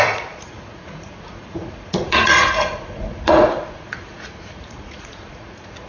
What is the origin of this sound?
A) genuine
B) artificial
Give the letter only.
B